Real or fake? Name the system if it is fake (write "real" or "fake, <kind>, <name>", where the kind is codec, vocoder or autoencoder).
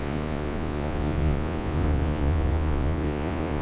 fake, vocoder, Vocos